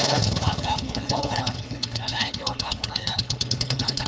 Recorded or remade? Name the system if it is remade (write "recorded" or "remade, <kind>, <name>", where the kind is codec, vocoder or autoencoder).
remade, codec, HILCodec